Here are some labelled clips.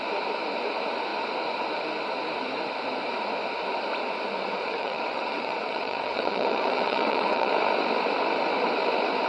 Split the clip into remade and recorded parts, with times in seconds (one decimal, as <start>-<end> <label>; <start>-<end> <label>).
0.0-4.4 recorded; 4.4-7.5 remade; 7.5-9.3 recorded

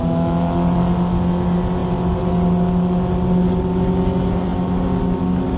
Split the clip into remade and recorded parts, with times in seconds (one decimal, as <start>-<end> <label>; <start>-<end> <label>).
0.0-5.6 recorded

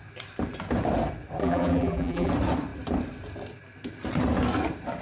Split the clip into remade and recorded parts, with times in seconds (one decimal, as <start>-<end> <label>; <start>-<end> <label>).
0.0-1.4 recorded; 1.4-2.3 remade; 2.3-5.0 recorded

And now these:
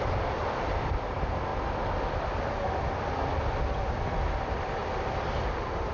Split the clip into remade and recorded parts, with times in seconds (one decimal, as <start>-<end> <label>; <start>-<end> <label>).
0.0-1.5 remade; 1.5-3.7 recorded; 3.7-5.9 remade

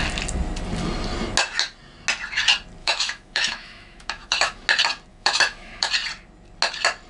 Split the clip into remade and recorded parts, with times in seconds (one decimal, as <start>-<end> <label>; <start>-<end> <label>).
0.0-2.8 recorded; 2.8-4.6 remade; 4.6-5.1 recorded; 5.1-5.9 remade; 5.9-7.1 recorded

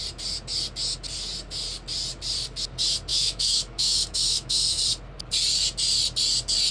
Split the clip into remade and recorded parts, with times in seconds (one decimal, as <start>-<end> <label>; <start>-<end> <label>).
0.0-3.1 recorded; 3.1-4.8 remade; 4.8-6.7 recorded

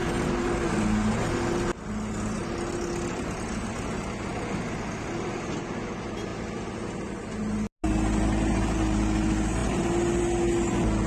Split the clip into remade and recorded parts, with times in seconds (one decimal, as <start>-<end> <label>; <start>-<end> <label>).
0.0-11.1 recorded